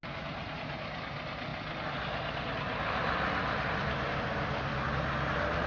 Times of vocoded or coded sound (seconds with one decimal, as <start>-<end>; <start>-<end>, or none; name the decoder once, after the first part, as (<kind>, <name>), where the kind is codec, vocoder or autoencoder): none